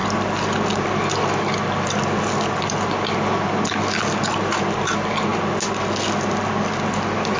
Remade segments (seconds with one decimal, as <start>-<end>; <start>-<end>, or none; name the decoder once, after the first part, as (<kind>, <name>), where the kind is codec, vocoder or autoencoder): none